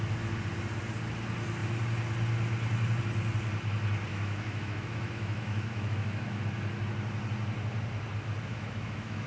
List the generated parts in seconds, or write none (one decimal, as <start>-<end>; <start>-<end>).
4.1-6.4; 8.5-9.3

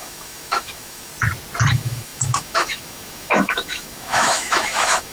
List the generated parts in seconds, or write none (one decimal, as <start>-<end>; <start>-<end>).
0.0-1.1; 1.7-5.1